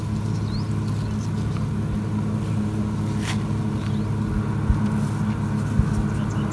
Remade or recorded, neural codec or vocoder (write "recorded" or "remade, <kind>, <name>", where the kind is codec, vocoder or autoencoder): recorded